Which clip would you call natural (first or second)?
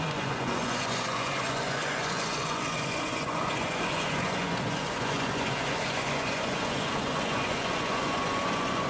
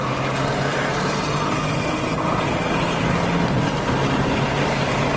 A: second